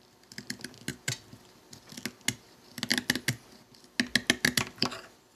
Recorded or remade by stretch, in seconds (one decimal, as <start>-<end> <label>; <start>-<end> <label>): 0.0-5.4 recorded